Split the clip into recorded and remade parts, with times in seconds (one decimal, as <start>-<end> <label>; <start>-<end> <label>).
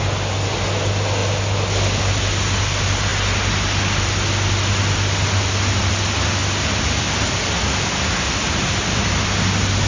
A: 0.0-6.4 recorded; 6.4-9.1 remade; 9.1-9.9 recorded